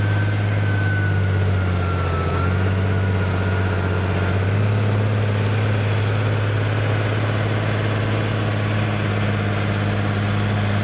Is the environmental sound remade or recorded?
recorded